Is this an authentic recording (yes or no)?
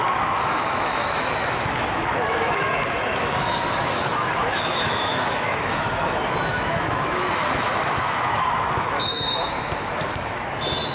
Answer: no